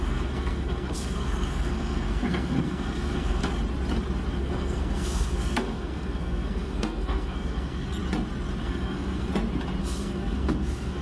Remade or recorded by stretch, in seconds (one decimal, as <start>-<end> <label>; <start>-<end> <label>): 0.0-3.4 remade; 3.4-4.4 recorded; 4.4-8.0 remade; 8.0-8.6 recorded; 8.6-9.3 remade; 9.3-9.8 recorded; 9.8-11.0 remade